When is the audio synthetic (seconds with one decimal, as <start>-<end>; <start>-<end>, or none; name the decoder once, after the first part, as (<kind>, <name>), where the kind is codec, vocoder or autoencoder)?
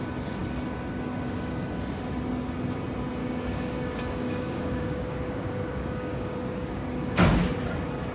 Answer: 3.2-7.4 (codec, DAC)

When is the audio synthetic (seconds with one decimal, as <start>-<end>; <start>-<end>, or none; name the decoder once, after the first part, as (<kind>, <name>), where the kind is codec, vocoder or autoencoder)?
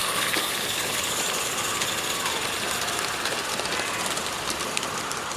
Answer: 0.0-1.2 (codec, DAC)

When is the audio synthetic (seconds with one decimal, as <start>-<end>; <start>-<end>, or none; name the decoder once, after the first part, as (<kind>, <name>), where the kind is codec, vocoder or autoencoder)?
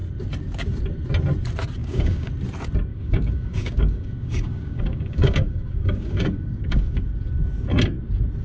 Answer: 1.8-2.3 (codec, DAC); 2.9-7.0